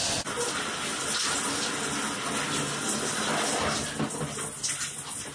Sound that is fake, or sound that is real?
real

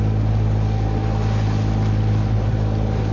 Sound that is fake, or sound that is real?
real